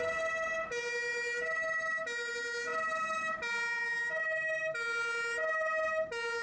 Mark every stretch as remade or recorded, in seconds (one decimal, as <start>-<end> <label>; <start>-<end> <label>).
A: 0.0-6.4 recorded

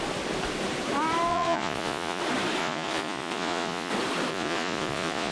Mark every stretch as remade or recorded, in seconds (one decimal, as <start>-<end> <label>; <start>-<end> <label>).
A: 0.0-1.3 recorded; 1.3-2.2 remade; 2.2-2.6 recorded; 2.6-3.9 remade; 3.9-4.3 recorded; 4.3-5.3 remade

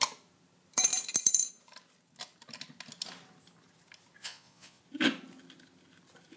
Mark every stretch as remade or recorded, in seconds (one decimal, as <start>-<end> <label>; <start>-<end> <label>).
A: 0.0-4.2 recorded; 4.2-4.8 remade; 4.8-6.4 recorded

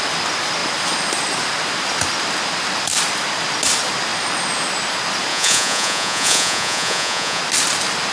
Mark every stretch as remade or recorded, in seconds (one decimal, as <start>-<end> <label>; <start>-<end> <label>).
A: 0.0-5.3 recorded; 5.3-7.4 remade; 7.4-8.1 recorded

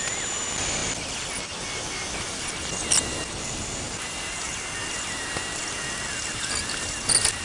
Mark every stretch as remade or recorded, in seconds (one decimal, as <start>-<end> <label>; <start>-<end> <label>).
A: 0.0-7.4 recorded